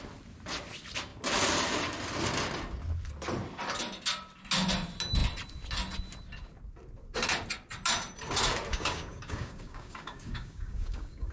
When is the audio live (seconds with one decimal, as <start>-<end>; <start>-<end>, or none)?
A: 0.0-8.7